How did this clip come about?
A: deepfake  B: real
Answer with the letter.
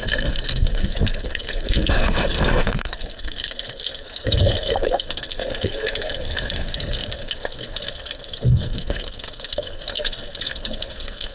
A